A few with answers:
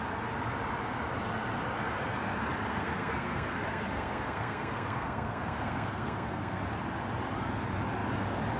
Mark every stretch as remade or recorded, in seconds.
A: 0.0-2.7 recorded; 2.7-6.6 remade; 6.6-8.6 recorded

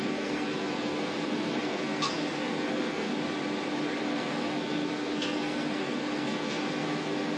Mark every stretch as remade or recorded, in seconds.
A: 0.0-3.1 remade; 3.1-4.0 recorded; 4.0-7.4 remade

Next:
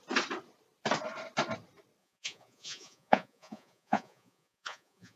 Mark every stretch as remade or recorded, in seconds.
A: 0.0-2.0 recorded; 2.0-5.2 remade

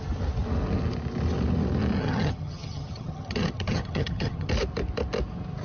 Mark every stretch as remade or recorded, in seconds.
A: 0.0-2.0 recorded; 2.0-4.5 remade; 4.5-5.6 recorded

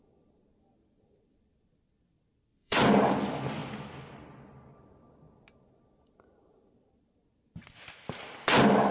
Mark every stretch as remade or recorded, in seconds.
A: 0.0-2.5 recorded; 2.5-3.1 remade; 3.1-8.9 recorded

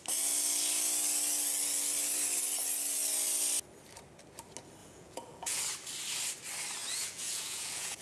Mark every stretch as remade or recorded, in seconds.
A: 0.0-4.8 recorded; 4.8-5.6 remade; 5.6-6.8 recorded; 6.8-8.0 remade